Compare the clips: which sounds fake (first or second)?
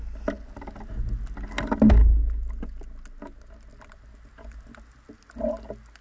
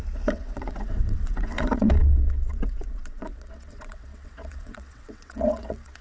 second